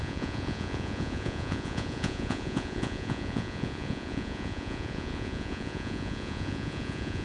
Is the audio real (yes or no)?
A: no